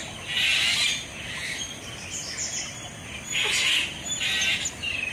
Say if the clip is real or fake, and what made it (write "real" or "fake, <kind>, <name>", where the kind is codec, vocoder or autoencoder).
real